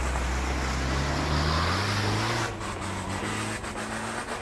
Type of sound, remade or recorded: recorded